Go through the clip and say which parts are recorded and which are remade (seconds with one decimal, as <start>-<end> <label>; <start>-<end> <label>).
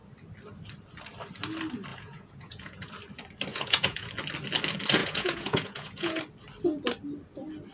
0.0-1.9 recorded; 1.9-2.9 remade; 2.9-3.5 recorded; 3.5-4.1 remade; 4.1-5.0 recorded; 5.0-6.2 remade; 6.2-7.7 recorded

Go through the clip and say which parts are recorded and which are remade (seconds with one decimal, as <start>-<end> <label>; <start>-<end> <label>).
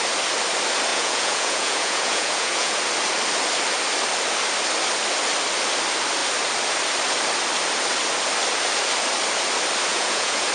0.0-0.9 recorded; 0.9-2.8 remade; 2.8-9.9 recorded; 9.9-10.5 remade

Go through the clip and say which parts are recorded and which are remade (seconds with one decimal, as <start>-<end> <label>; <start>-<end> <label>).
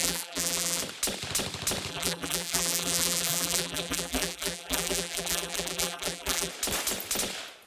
0.0-0.8 remade; 0.8-1.9 recorded; 1.9-6.5 remade; 6.5-7.7 recorded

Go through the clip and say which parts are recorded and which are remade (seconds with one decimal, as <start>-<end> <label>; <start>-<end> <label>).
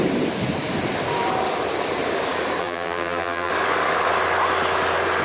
0.0-2.6 recorded; 2.6-3.5 remade; 3.5-5.2 recorded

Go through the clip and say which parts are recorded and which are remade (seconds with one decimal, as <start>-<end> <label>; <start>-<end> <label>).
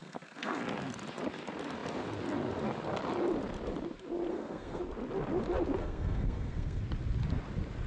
0.0-0.6 remade; 0.6-4.3 recorded; 4.3-4.8 remade; 4.8-5.8 recorded; 5.8-6.8 remade; 6.8-7.9 recorded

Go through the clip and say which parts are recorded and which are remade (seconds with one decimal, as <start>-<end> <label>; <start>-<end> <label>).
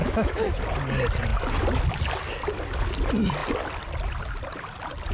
0.0-0.6 remade; 0.6-5.1 recorded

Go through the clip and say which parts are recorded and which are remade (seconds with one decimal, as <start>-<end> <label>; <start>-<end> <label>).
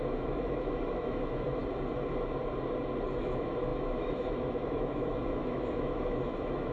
0.0-1.6 remade; 1.6-3.2 recorded; 3.2-6.7 remade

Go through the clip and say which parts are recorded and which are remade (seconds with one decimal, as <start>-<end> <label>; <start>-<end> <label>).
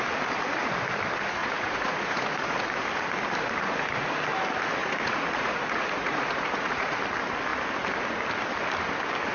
0.0-1.4 recorded; 1.4-2.6 remade; 2.6-4.8 recorded; 4.8-7.0 remade; 7.0-9.3 recorded